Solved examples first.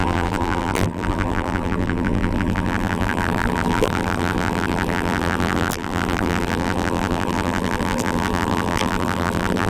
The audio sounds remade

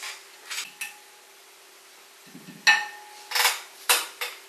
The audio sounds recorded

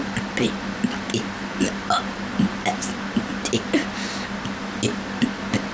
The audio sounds recorded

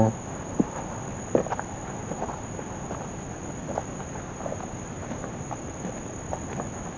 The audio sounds recorded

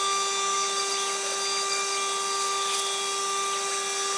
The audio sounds recorded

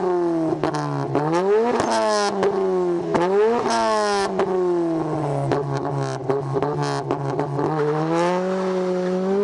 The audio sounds recorded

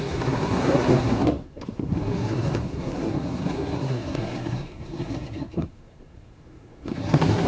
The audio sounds remade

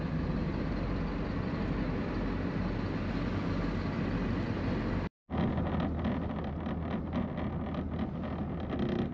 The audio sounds recorded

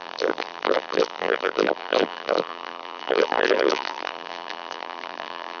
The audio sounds remade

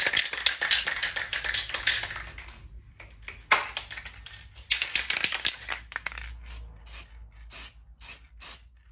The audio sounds recorded